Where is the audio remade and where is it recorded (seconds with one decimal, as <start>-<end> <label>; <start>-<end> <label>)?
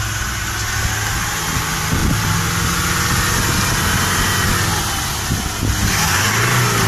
0.0-6.9 recorded